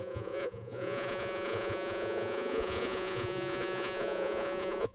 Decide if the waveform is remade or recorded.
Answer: remade